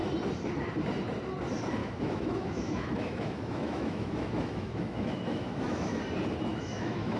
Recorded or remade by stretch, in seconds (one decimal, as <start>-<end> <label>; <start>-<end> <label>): 0.0-1.8 recorded; 1.8-6.0 remade; 6.0-6.5 recorded; 6.5-7.2 remade